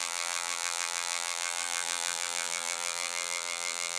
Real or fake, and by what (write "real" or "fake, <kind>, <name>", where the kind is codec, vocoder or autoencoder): fake, vocoder, BigVGAN v2